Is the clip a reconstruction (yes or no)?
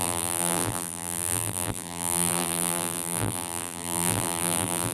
yes